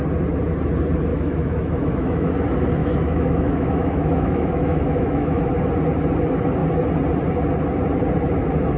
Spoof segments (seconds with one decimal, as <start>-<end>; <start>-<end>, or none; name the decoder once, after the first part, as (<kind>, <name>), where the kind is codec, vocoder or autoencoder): 1.1-2.3 (autoencoder, DAC-VAE); 2.8-5.4